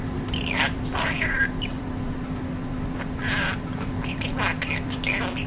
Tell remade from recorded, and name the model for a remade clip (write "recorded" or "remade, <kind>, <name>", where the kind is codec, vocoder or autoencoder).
remade, vocoder, BigVGAN v2